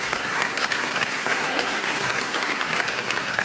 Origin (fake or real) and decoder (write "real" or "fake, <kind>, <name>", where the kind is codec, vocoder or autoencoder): fake, codec, SNAC